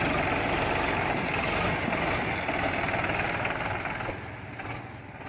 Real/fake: real